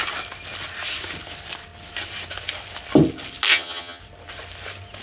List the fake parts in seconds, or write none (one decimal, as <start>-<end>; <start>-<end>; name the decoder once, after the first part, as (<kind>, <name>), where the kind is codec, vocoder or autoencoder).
3.5-4.0 (vocoder, HiFi-GAN)